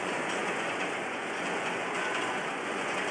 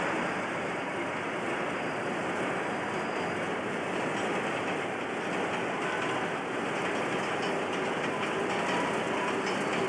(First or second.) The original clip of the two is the second